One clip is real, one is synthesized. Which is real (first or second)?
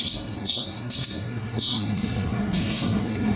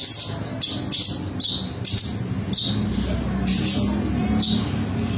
second